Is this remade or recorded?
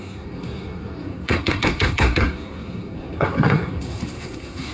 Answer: remade